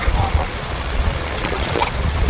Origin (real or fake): fake